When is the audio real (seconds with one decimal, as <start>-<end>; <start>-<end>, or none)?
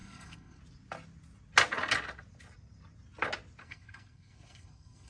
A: 0.6-3.6